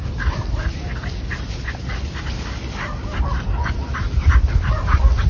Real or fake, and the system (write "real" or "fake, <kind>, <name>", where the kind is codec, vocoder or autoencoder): real